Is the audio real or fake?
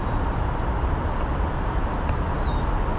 real